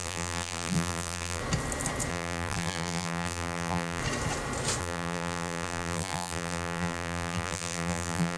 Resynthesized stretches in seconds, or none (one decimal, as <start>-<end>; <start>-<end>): 0.0-1.4; 2.1-4.0; 4.8-8.4